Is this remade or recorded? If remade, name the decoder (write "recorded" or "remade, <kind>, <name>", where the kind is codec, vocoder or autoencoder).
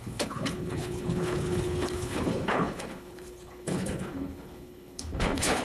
remade, codec, HILCodec